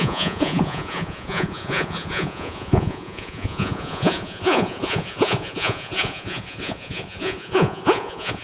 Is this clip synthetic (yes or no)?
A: yes